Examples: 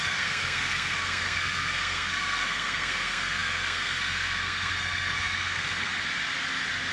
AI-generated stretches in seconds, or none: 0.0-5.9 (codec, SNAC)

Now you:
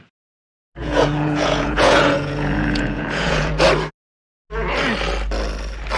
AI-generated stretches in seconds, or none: 0.8-3.5 (vocoder, Vocos)

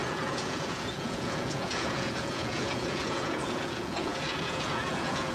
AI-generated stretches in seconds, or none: 0.0-5.3 (vocoder, Vocos)

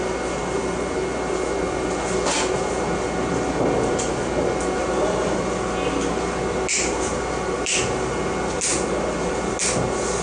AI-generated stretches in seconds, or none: none

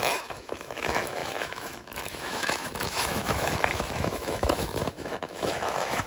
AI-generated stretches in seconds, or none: 0.0-6.1 (autoencoder, DAC-VAE)